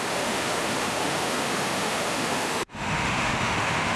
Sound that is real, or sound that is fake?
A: fake